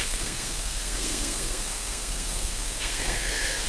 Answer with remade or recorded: remade